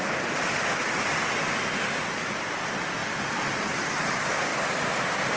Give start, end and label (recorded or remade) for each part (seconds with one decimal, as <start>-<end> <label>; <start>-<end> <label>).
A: 0.0-5.4 recorded